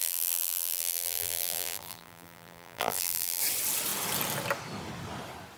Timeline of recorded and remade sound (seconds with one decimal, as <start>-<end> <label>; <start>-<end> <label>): 0.0-3.4 remade; 3.4-5.6 recorded